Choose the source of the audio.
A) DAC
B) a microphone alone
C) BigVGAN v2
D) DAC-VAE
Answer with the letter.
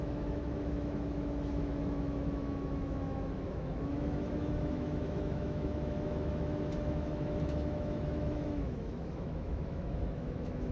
D